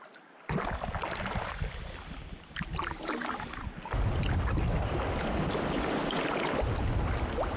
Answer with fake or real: real